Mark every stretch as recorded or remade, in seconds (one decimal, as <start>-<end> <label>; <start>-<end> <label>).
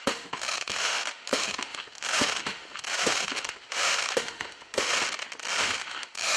0.0-4.9 remade; 4.9-5.6 recorded; 5.6-6.4 remade